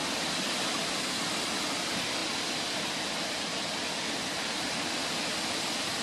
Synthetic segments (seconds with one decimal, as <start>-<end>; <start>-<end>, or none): none